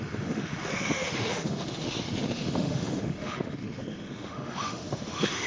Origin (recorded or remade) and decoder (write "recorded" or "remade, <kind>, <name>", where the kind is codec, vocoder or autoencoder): remade, autoencoder, DAC-VAE